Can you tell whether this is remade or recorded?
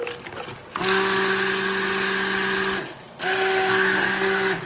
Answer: recorded